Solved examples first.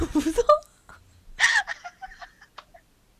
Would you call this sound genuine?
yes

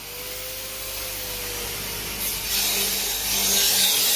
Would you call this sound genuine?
yes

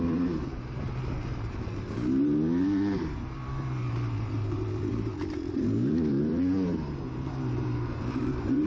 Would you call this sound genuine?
no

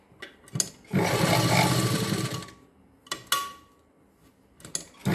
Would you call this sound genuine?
yes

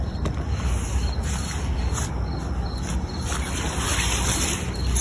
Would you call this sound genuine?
yes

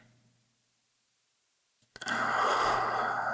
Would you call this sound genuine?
yes